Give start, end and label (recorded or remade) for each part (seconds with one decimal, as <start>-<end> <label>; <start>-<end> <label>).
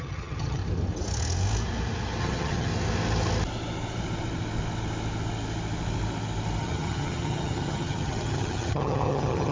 0.0-0.6 remade; 0.6-2.2 recorded; 2.2-2.7 remade; 2.7-6.6 recorded; 6.6-9.5 remade